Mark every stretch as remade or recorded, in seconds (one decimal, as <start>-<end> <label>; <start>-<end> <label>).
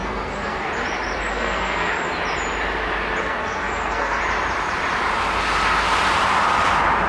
0.0-0.7 remade; 0.7-1.3 recorded; 1.3-1.9 remade; 1.9-3.2 recorded; 3.2-4.2 remade; 4.2-7.1 recorded